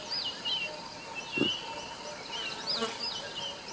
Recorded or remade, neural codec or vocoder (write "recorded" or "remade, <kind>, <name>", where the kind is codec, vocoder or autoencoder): recorded